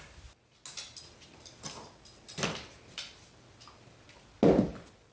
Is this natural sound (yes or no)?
yes